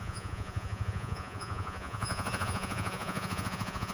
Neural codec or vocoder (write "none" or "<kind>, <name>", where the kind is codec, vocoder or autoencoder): vocoder, Vocos